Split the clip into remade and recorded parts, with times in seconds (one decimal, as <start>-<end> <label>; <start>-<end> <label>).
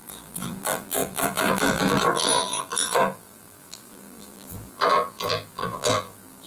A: 0.0-6.5 remade